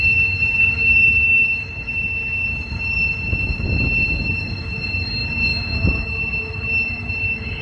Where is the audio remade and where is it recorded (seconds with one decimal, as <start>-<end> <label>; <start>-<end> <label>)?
0.0-7.6 remade